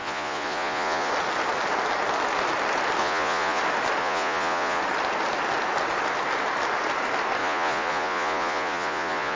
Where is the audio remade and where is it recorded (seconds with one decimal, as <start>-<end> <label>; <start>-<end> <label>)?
0.0-1.1 remade; 1.1-3.0 recorded; 3.0-3.6 remade; 3.6-4.0 recorded; 4.0-4.8 remade; 4.8-7.4 recorded; 7.4-9.4 remade

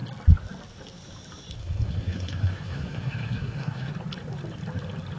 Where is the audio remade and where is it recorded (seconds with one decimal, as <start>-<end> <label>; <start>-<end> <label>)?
0.0-1.6 recorded; 1.6-3.9 remade; 3.9-5.2 recorded

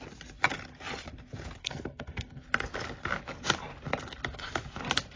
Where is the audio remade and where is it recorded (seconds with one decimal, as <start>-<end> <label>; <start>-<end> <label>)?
0.0-1.6 recorded; 1.6-2.4 remade; 2.4-5.2 recorded

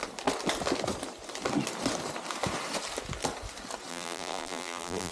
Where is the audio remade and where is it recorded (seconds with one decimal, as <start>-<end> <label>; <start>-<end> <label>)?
0.0-3.9 recorded; 3.9-5.1 remade